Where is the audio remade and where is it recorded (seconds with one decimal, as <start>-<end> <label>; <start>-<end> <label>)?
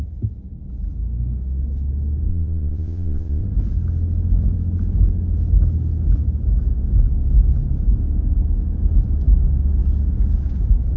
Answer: 0.0-2.3 recorded; 2.3-3.4 remade; 3.4-11.0 recorded